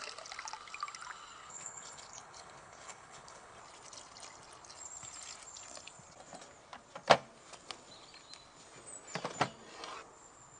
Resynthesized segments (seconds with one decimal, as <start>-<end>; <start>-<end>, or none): 1.4-3.6